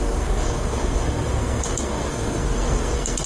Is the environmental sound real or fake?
fake